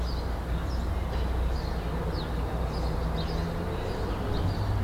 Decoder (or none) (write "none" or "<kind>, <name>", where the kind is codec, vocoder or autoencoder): none